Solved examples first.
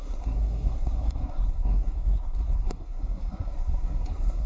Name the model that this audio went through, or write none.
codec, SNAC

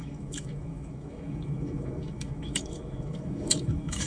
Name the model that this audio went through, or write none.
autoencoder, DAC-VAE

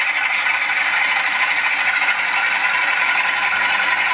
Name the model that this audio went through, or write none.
none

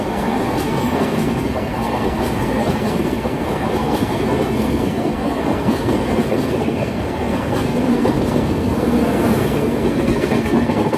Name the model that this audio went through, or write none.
codec, SNAC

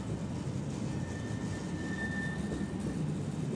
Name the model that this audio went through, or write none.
none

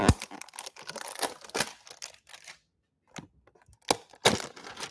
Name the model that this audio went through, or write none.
none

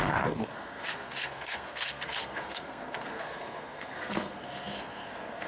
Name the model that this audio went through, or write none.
codec, SNAC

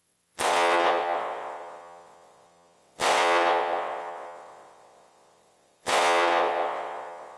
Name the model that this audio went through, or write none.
vocoder, WaveNeXt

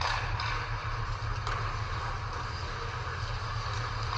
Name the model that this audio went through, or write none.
none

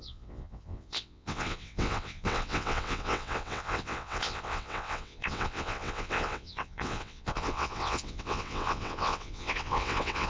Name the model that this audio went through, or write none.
vocoder, WaveNeXt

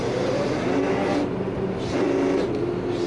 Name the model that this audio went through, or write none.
none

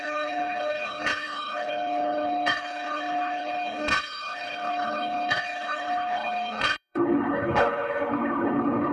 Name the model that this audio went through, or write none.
codec, HILCodec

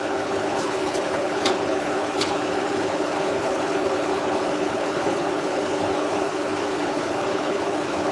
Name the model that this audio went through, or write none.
codec, HILCodec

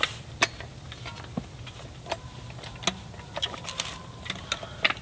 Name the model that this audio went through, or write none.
none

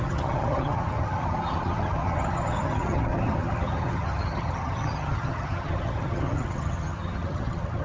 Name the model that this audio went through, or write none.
vocoder, HiFi-GAN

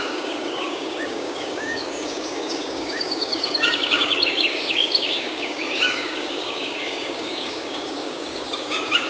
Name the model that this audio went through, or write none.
codec, DAC